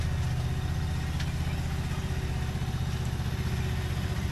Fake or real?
real